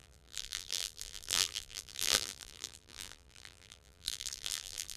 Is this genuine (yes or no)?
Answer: no